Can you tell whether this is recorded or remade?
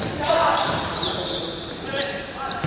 recorded